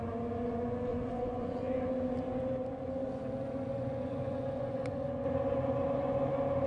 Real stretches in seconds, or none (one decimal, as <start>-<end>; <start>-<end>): 0.0-0.9; 1.9-3.7; 5.2-6.7